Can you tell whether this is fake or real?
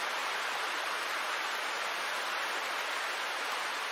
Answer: real